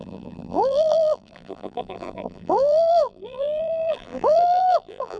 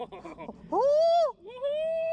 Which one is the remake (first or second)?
first